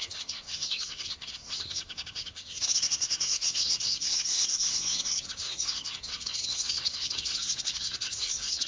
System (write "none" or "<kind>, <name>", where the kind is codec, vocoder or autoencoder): codec, SNAC